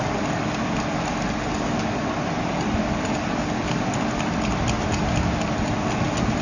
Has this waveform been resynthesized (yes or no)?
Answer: no